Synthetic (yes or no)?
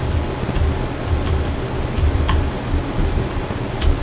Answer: no